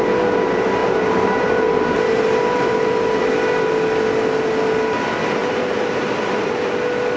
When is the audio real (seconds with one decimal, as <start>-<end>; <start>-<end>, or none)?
0.0-0.8; 3.2-5.4; 6.7-7.2